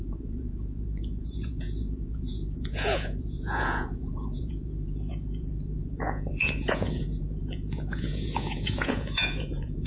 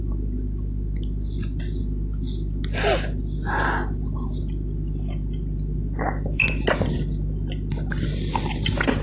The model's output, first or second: first